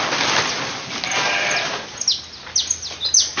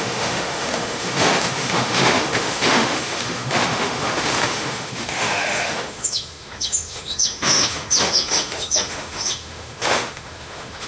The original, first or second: first